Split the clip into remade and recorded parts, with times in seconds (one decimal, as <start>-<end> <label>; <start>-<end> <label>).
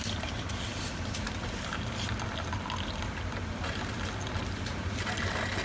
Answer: 0.0-5.6 recorded